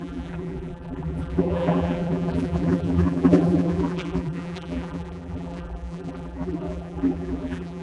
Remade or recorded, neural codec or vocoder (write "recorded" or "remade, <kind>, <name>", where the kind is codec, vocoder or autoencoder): remade, vocoder, BigVGAN v2